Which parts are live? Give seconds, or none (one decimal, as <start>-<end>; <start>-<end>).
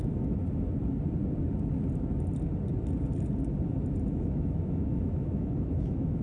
0.4-4.1